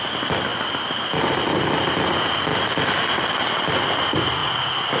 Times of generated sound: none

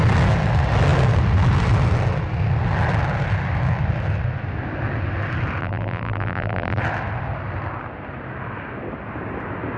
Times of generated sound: 5.6-6.8 (vocoder, BigVGAN v2)

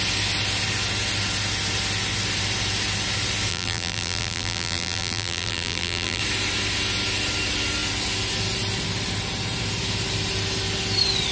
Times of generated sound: 3.5-6.2 (vocoder, BigVGAN v2)

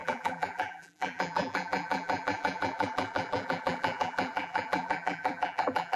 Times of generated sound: 0.0-6.0 (vocoder, BigVGAN v2)

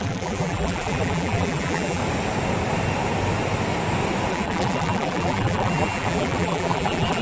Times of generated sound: 0.0-2.0 (vocoder, BigVGAN v2); 4.3-7.2